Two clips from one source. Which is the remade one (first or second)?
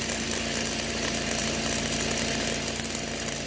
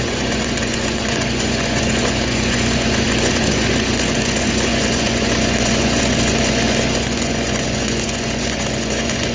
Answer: second